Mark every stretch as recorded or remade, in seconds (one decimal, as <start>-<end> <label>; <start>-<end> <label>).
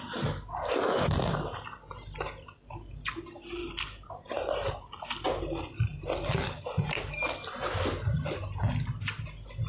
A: 0.0-9.7 recorded